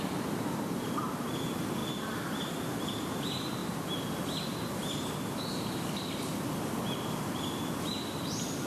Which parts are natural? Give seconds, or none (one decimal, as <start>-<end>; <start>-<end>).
3.6-8.7